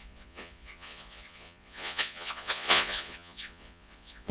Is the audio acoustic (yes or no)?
no